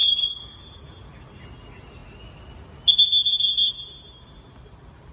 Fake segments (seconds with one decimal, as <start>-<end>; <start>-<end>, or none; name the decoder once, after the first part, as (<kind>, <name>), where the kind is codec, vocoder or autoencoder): 0.0-0.6 (codec, SNAC)